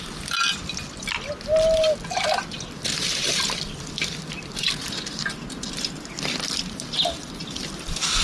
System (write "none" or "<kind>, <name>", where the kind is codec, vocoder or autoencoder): none